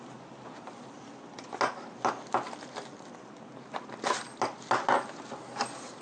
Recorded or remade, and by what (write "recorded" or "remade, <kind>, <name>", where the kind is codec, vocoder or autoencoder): recorded